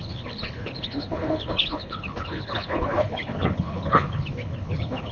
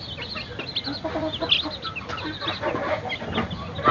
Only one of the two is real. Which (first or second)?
second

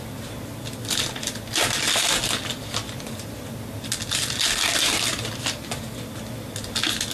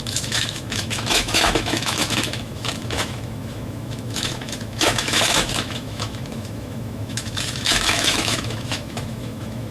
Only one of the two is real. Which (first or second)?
first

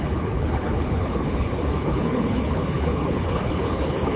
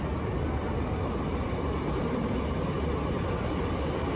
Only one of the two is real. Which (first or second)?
second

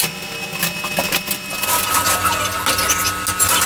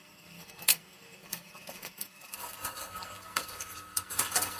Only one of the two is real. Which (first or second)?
first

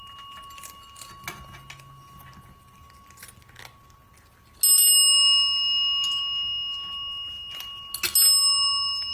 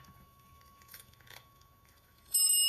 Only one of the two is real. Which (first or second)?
first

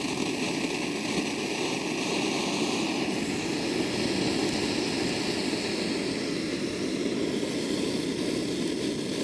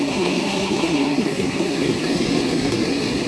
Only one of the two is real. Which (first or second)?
first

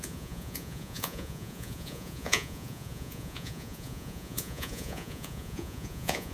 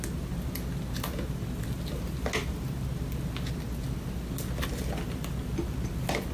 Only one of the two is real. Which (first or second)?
second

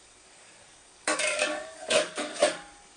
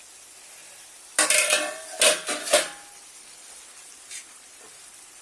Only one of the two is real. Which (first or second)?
second